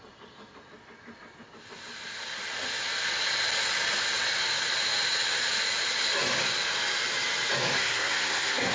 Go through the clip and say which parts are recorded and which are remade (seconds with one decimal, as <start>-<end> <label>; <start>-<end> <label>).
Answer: 0.0-7.8 recorded; 7.8-8.7 remade